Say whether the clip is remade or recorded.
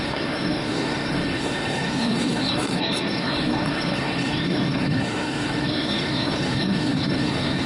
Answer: remade